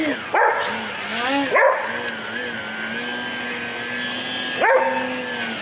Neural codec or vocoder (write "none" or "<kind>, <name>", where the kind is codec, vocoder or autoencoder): none